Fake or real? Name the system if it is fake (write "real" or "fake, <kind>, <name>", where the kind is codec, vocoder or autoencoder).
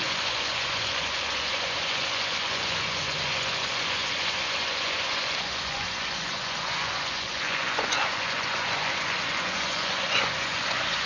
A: fake, vocoder, Vocos